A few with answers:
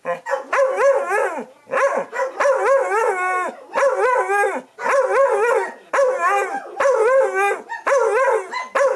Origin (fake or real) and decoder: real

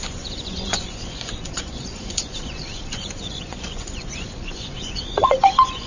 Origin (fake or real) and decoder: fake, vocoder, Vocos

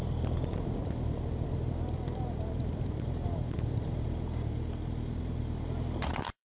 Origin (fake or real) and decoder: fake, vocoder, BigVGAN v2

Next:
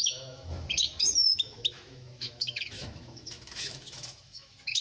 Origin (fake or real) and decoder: fake, autoencoder, DAC-VAE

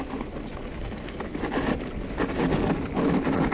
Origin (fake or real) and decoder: real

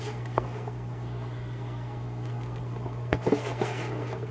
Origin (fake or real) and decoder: fake, codec, SNAC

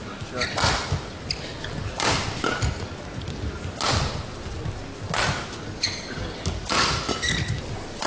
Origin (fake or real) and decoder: real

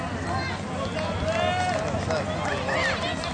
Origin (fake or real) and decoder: real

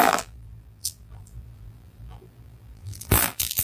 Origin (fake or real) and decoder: fake, vocoder, BigVGAN v2